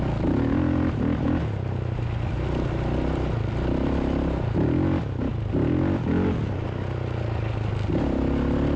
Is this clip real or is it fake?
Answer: real